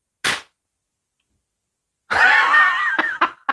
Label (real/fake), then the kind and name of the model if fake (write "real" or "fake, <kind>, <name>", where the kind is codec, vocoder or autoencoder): real